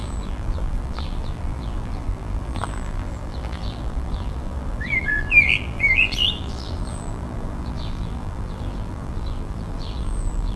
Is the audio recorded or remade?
remade